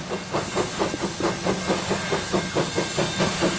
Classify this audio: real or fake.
real